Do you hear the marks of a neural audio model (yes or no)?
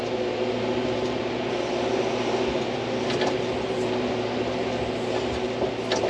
no